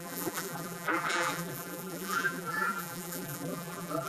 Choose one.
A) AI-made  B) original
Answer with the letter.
A